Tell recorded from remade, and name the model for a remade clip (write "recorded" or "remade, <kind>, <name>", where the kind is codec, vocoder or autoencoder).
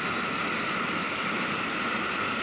recorded